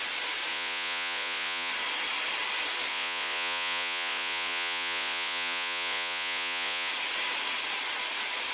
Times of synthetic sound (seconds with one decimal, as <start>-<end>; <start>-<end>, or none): 0.5-1.7; 2.9-6.9